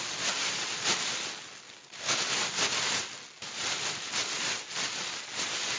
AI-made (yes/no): no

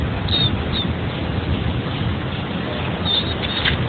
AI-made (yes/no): no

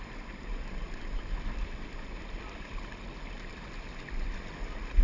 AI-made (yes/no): yes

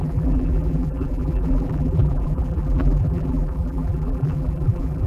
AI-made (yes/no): yes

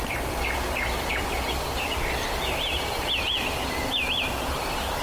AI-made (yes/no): yes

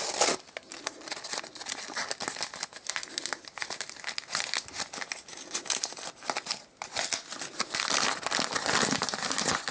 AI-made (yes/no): no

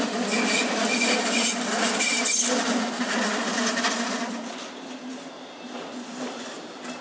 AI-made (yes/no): no